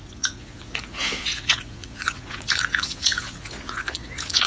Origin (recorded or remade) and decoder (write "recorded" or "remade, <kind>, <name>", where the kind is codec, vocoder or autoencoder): remade, vocoder, Vocos